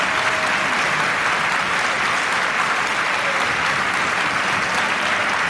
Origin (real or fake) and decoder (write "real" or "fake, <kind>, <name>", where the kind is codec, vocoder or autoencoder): real